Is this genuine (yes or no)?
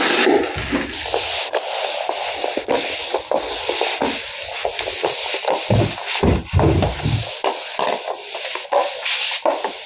yes